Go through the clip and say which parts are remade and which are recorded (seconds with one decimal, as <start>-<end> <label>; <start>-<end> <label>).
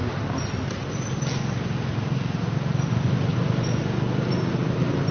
0.0-1.5 remade; 1.5-3.3 recorded; 3.3-3.8 remade; 3.8-5.1 recorded